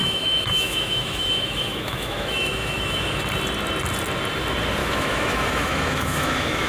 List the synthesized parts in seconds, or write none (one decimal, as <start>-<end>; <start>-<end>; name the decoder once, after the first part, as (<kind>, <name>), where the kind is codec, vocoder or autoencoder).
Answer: 0.0-3.2 (autoencoder, DAC-VAE); 4.8-6.7